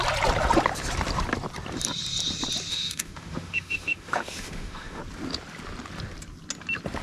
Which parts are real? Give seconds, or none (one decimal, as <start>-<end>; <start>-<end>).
0.0-2.7; 5.0-7.0